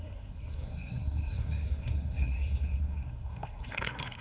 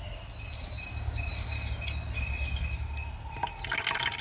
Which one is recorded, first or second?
second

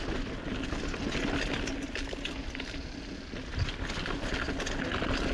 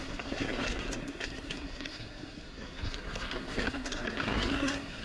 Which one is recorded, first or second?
first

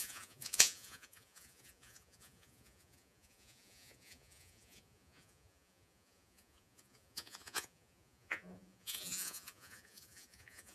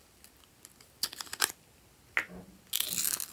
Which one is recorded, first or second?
second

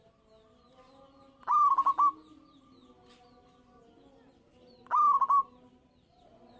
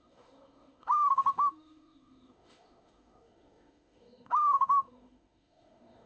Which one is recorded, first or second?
first